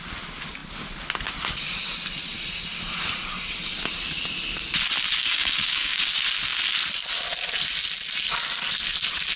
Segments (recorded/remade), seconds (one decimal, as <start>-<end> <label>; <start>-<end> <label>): 0.0-5.2 recorded; 5.2-6.1 remade; 6.1-9.4 recorded